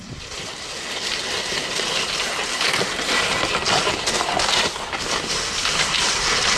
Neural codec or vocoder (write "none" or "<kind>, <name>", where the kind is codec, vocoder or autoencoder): none